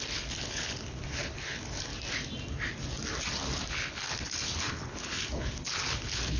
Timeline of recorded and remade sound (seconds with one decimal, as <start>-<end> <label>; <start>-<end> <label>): 0.0-1.9 remade; 1.9-3.7 recorded; 3.7-6.4 remade

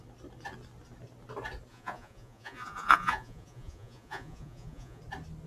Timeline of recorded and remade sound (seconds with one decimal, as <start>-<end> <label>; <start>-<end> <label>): 0.0-1.7 recorded; 1.7-5.0 remade; 5.0-5.5 recorded

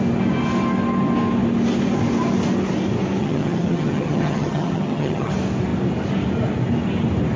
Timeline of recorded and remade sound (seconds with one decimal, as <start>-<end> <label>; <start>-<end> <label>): 0.0-3.2 recorded; 3.2-5.3 remade; 5.3-7.4 recorded

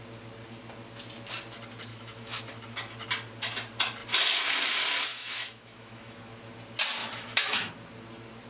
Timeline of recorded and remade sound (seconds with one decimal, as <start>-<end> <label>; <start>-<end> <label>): 0.0-1.9 recorded; 1.9-2.4 remade; 2.4-5.1 recorded; 5.1-6.2 remade; 6.2-7.0 recorded; 7.0-7.7 remade; 7.7-8.5 recorded

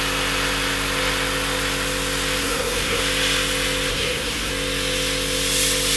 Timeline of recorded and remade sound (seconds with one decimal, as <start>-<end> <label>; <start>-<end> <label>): 0.0-2.4 recorded; 2.4-3.0 remade; 3.0-3.9 recorded; 3.9-4.5 remade; 4.5-6.0 recorded

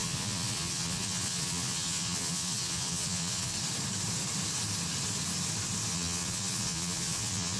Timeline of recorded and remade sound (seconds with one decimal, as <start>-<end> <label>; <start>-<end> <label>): 0.0-3.5 remade; 3.5-5.9 recorded; 5.9-7.6 remade

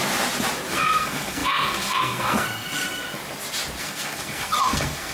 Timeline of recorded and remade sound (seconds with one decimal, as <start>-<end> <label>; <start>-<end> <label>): 0.0-0.7 recorded; 0.7-3.2 remade; 3.2-3.8 recorded; 3.8-5.1 remade

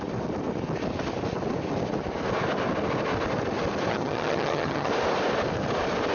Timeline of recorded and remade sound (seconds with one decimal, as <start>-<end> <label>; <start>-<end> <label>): 0.0-3.9 recorded; 3.9-4.9 remade; 4.9-6.1 recorded